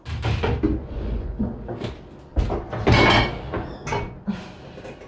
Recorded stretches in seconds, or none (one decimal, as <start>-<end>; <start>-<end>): 0.0-0.8; 1.5-5.1